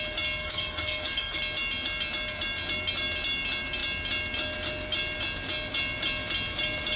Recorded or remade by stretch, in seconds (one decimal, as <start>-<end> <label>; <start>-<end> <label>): 0.0-0.4 recorded; 0.4-1.4 remade; 1.4-7.0 recorded